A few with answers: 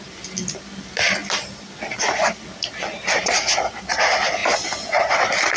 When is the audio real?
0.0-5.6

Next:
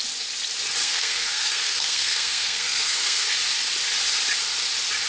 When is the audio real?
0.0-0.8; 3.3-5.1